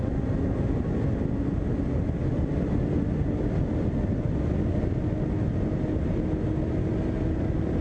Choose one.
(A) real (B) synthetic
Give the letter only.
A